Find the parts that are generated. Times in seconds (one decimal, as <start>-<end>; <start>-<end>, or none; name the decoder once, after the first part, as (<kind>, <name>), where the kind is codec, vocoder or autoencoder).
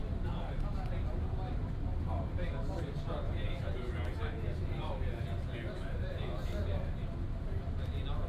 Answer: none